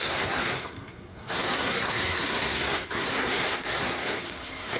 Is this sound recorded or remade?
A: remade